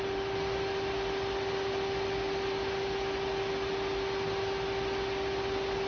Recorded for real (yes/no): yes